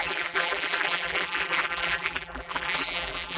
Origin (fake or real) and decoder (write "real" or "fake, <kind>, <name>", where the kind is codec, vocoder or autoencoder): fake, vocoder, BigVGAN v2